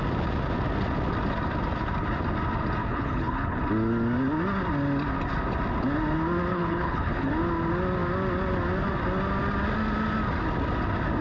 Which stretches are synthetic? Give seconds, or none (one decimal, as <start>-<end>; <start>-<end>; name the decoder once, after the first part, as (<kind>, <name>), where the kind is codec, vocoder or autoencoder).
2.9-3.6 (codec, HILCodec); 6.5-7.3